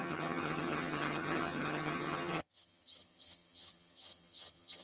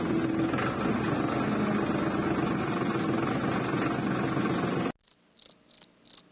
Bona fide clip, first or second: second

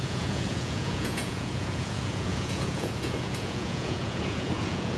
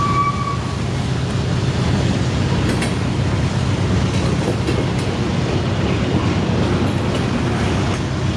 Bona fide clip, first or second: second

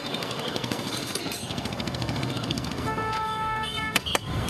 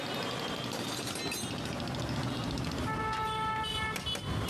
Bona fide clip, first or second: second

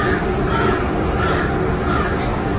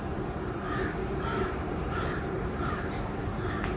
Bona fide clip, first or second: first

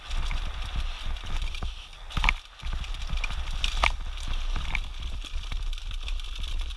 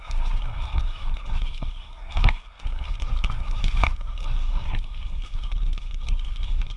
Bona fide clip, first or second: first